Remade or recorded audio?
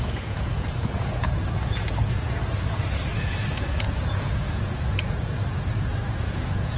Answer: remade